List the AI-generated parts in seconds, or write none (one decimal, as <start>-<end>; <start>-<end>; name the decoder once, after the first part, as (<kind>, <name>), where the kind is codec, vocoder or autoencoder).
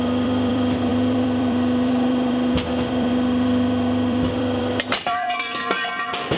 0.0-6.4 (vocoder, BigVGAN v2)